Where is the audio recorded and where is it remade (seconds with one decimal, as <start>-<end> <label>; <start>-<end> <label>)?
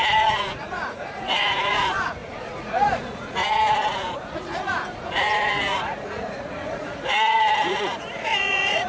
0.0-8.9 remade